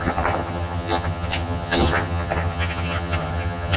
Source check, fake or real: fake